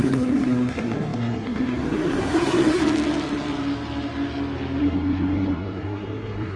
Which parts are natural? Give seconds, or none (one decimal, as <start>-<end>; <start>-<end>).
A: 2.8-4.8